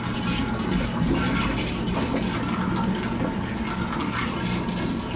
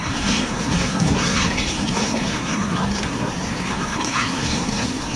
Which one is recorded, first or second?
first